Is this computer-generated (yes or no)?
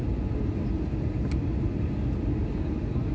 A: no